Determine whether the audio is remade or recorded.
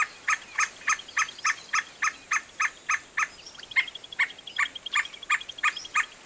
recorded